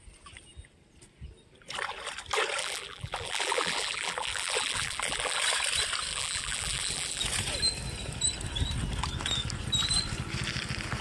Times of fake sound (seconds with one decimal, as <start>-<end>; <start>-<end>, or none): 2.6-5.4; 6.1-7.2